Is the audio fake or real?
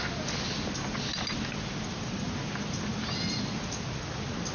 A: real